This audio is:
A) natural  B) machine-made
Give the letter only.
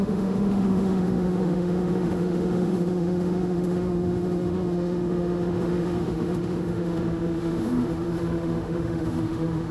B